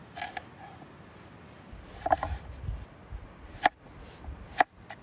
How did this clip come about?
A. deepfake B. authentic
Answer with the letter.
B